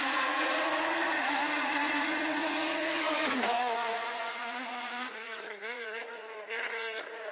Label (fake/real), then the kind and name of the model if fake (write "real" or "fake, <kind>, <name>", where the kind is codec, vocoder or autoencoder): fake, vocoder, Vocos